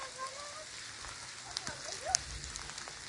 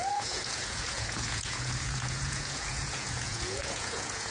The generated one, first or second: second